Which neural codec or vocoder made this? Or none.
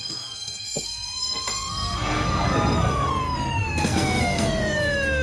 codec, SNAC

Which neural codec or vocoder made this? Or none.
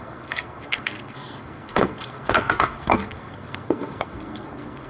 codec, SNAC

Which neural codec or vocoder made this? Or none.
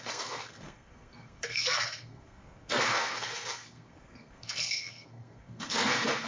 codec, SNAC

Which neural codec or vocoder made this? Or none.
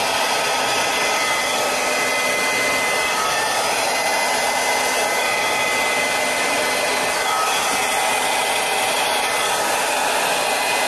none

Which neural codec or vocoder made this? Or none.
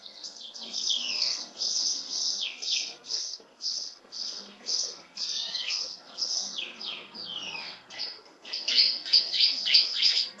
codec, SNAC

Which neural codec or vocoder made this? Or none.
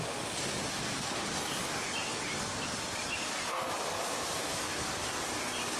none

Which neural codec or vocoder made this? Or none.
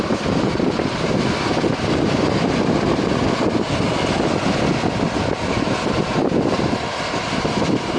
none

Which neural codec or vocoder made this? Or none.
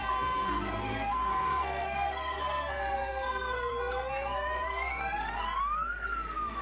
codec, SNAC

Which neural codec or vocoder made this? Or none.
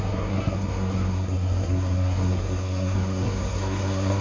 codec, SNAC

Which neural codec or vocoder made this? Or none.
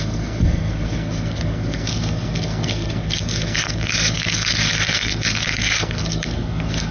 codec, SNAC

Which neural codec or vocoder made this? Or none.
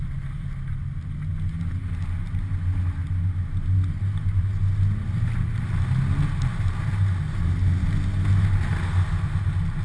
none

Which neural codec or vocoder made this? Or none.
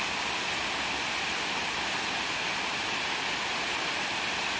none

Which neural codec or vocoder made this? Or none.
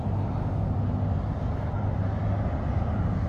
none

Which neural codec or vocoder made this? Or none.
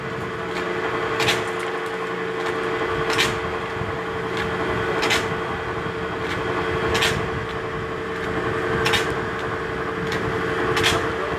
none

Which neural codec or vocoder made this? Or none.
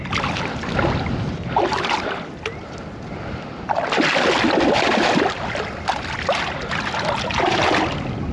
none